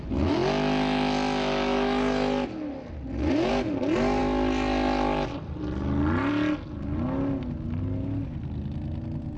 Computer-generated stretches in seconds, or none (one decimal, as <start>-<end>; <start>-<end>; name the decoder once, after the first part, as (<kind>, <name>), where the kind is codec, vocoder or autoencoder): none